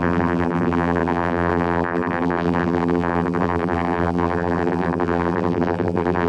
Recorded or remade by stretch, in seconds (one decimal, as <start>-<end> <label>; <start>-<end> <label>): 0.0-6.3 remade